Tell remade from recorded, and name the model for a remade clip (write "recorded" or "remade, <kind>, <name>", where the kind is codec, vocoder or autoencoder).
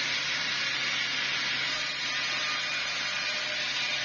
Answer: recorded